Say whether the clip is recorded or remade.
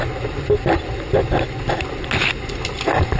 recorded